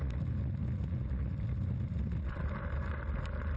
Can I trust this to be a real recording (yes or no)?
yes